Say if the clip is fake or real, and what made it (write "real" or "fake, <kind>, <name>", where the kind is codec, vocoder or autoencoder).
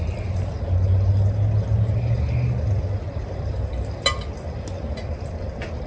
real